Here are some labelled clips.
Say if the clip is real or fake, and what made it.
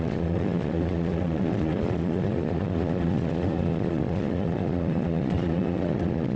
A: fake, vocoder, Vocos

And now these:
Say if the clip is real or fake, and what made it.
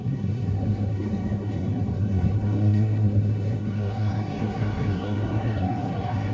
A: fake, codec, SNAC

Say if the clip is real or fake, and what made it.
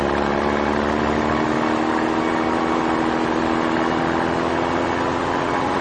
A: real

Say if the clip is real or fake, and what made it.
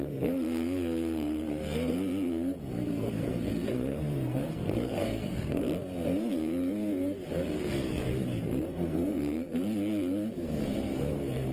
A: fake, codec, SNAC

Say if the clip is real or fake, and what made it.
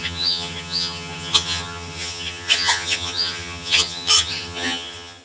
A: fake, vocoder, HiFi-GAN